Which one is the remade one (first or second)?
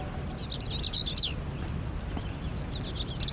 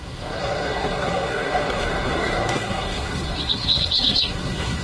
second